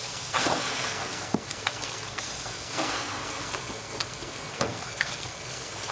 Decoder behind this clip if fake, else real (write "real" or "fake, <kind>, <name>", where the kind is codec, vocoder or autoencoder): fake, codec, SNAC